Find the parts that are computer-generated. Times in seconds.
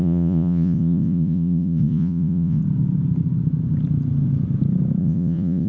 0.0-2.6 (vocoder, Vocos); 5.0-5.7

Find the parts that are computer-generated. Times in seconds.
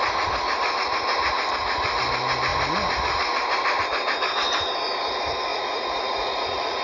5.5-6.8 (vocoder, Vocos)